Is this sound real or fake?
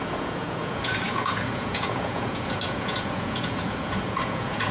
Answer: fake